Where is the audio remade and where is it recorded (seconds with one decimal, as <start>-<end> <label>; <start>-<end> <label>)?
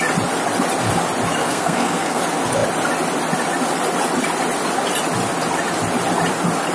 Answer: 0.0-1.4 recorded; 1.4-2.2 remade; 2.2-6.7 recorded